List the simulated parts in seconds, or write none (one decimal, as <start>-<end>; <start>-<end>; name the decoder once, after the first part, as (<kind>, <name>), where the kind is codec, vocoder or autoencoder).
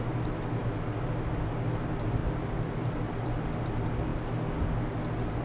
2.2-3.2 (vocoder, BigVGAN v2)